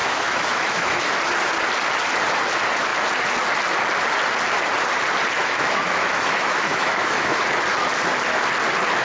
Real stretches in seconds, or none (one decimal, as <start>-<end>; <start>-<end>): 1.2-5.4; 7.4-9.0

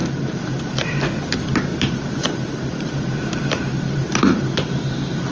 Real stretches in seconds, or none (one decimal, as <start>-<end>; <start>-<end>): 1.0-1.7

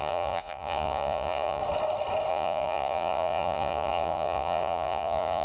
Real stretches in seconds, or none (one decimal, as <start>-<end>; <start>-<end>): 1.6-2.3

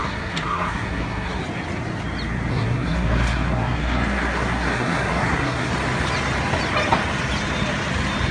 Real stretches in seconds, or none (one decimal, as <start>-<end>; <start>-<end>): 1.4-2.5; 5.7-8.3